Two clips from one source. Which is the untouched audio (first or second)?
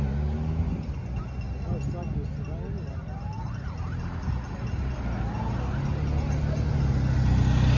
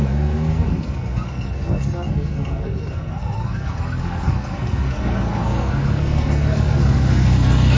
first